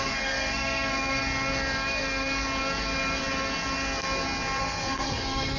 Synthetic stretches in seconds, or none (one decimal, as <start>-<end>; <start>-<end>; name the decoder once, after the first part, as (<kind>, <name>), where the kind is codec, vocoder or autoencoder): 0.0-1.2 (codec, SNAC); 4.6-5.6